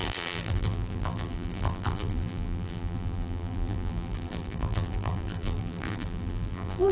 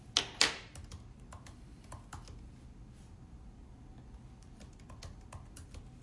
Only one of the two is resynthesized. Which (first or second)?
first